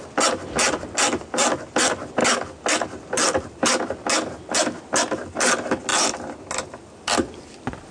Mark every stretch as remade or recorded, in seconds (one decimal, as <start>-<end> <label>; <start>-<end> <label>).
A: 0.0-7.9 recorded